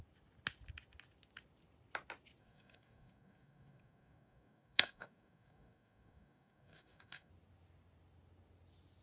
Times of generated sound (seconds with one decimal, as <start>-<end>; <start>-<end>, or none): 2.4-7.3

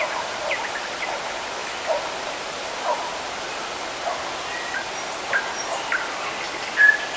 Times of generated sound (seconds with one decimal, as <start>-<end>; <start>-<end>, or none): none

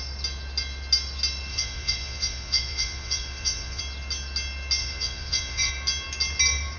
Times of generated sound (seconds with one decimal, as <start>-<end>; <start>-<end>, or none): 1.5-3.8; 4.8-5.7

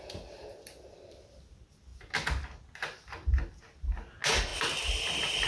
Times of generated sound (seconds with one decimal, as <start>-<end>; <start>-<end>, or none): none

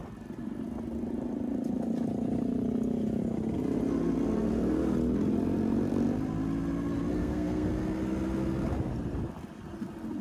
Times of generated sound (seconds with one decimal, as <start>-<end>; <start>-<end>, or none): 7.2-7.7

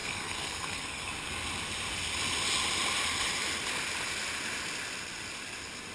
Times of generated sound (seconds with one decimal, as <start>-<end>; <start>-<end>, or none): 0.0-1.1

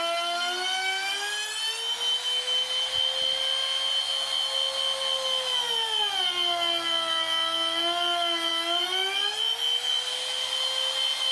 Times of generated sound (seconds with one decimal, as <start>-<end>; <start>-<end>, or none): none

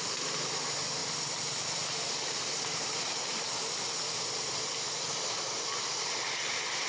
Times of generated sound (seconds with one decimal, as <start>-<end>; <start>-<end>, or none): none